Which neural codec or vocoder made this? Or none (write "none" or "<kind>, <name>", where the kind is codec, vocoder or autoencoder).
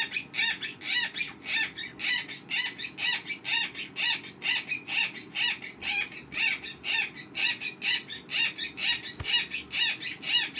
none